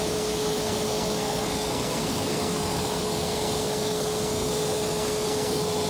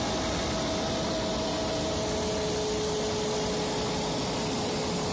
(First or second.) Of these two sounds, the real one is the second